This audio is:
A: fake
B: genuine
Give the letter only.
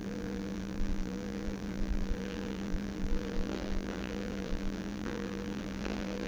A